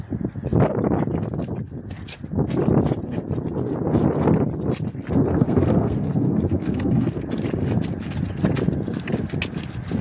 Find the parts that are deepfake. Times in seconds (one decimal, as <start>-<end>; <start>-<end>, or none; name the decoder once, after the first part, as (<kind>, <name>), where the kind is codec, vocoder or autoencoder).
5.3-7.2 (codec, SNAC)